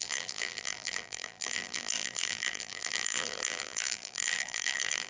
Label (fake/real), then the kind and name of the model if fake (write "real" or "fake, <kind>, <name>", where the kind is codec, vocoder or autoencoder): fake, vocoder, BigVGAN v2